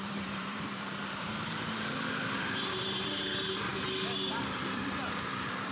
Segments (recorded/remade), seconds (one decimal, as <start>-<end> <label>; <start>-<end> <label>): 0.0-3.7 remade; 3.7-4.3 recorded; 4.3-5.7 remade